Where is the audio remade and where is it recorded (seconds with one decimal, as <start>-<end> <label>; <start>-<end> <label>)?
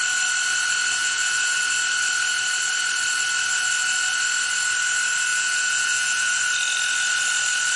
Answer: 0.0-1.0 recorded; 1.0-1.6 remade; 1.6-5.3 recorded; 5.3-6.4 remade; 6.4-7.8 recorded